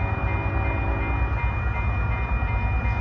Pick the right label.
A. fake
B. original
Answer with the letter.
B